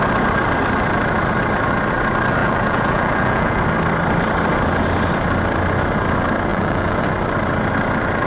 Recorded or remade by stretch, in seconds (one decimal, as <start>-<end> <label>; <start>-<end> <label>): 0.0-2.4 recorded; 2.4-3.6 remade; 3.6-6.5 recorded; 6.5-7.0 remade; 7.0-8.3 recorded